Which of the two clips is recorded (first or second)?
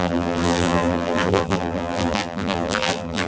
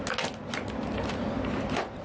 second